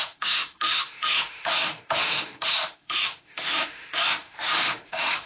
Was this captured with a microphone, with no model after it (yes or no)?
no